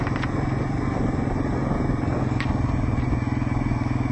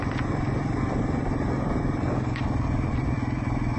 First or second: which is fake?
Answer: second